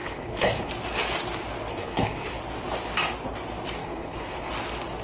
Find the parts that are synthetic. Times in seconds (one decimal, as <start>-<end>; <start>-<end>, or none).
0.0-0.7; 1.7-2.4; 3.8-4.5